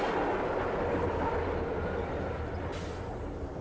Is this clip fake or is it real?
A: real